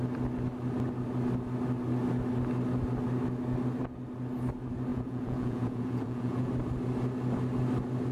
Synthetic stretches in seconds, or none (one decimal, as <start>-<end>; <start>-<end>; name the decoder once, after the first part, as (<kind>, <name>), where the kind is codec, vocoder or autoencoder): 4.9-6.5 (vocoder, Vocos)

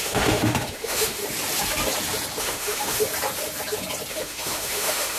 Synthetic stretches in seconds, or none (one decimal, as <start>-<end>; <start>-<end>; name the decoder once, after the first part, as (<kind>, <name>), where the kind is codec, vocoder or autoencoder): 0.0-1.2 (autoencoder, DAC-VAE); 2.4-3.0; 4.1-5.2

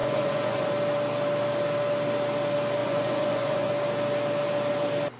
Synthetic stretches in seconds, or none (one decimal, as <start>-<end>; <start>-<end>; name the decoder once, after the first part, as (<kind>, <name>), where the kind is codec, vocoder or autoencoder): 0.0-0.7 (vocoder, Vocos); 2.8-3.7

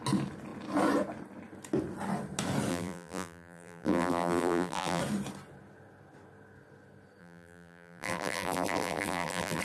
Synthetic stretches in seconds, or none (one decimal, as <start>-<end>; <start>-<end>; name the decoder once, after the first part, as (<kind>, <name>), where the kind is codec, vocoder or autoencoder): 2.7-5.0 (vocoder, BigVGAN v2); 7.2-9.6